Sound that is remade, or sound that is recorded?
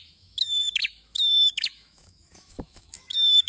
remade